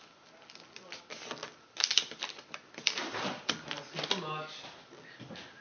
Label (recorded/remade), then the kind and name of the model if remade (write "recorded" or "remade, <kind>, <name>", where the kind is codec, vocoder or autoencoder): recorded